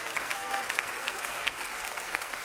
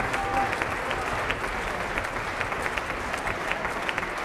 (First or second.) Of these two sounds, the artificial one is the first